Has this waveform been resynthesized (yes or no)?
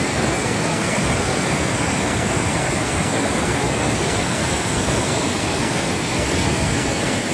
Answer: yes